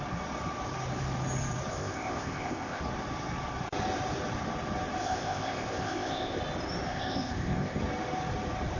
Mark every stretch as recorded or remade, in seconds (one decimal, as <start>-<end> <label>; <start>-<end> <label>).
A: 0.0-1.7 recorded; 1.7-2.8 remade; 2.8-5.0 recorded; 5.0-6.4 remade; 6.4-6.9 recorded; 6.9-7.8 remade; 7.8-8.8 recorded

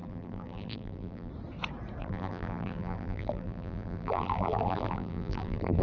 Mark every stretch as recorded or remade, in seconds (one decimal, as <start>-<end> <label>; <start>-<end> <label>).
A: 0.0-1.3 remade; 1.3-2.0 recorded; 2.0-5.8 remade

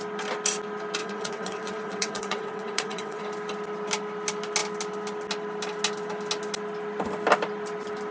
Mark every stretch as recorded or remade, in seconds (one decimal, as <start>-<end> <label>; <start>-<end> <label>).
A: 0.0-1.0 recorded; 1.0-3.2 remade; 3.2-8.1 recorded